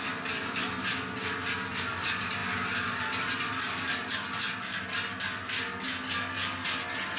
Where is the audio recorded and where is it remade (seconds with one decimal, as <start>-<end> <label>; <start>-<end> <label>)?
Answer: 0.0-7.2 recorded